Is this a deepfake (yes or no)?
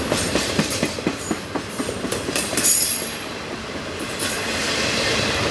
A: yes